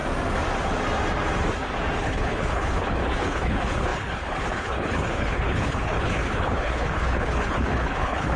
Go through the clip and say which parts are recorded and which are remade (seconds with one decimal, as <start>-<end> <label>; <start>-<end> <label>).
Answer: 0.0-2.0 recorded; 2.0-8.4 remade

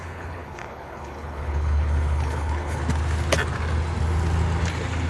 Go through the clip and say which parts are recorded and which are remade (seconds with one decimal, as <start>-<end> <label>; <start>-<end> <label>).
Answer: 0.0-2.8 remade; 2.8-5.1 recorded

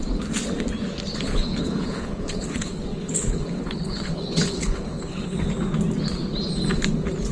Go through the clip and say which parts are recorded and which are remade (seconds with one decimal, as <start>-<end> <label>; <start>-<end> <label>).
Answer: 0.0-1.1 recorded; 1.1-5.5 remade; 5.5-7.3 recorded

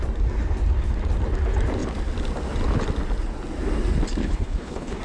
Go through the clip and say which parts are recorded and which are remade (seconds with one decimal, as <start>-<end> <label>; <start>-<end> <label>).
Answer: 0.0-4.2 recorded; 4.2-5.0 remade

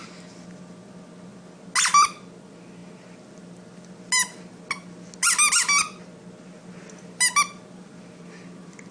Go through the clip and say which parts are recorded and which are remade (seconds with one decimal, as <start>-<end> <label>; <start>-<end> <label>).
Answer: 0.0-8.9 recorded

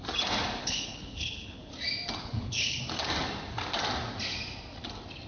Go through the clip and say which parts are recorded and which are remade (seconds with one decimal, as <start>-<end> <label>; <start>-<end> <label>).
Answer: 0.0-0.6 recorded; 0.6-1.7 remade; 1.7-2.2 recorded; 2.2-2.8 remade; 2.8-5.3 recorded

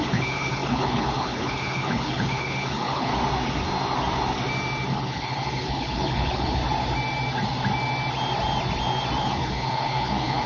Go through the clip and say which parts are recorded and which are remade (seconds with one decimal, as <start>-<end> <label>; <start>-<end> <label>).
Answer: 0.0-3.1 remade; 3.1-4.9 recorded; 4.9-6.6 remade; 6.6-9.2 recorded; 9.2-10.5 remade